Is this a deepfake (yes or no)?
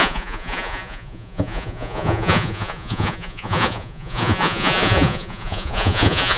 yes